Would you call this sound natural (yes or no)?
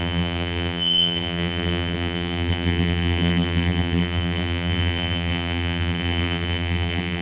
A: no